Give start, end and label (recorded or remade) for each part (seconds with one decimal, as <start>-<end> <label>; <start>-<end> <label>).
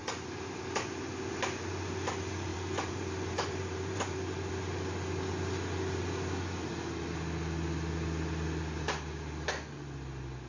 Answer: 0.0-0.7 remade; 0.7-2.5 recorded; 2.5-4.5 remade; 4.5-10.5 recorded